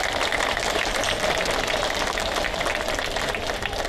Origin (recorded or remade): recorded